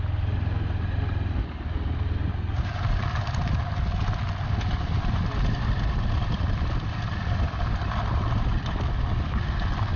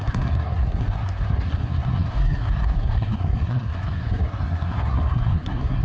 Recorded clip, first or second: first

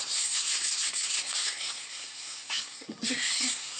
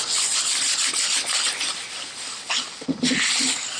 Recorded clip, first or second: second